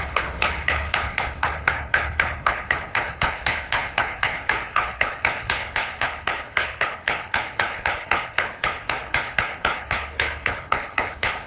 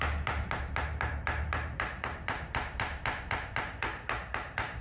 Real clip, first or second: second